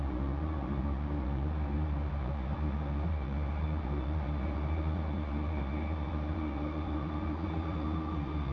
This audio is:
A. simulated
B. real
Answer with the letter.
A